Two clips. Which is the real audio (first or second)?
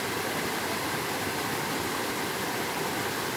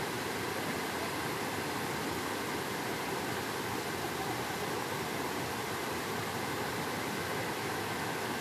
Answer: second